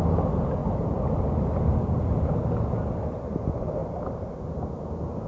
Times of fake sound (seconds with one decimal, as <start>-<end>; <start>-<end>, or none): 3.8-4.3